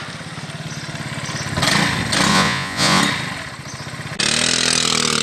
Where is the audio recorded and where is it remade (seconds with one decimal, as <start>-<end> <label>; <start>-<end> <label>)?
0.0-2.3 recorded; 2.3-3.0 remade; 3.0-5.2 recorded